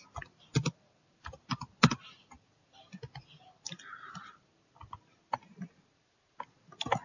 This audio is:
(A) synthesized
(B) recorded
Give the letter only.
B